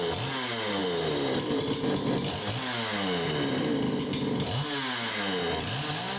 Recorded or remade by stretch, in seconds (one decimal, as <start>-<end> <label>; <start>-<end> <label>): 0.0-6.2 recorded